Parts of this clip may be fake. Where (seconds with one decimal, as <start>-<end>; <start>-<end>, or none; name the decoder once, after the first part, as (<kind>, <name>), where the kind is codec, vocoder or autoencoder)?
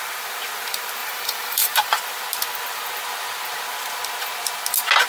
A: 1.0-2.0 (vocoder, BigVGAN v2)